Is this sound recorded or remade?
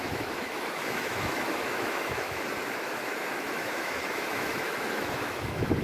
remade